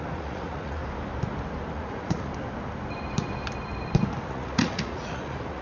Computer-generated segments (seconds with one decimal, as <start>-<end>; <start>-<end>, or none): 0.0-0.8; 1.7-2.3; 4.2-5.6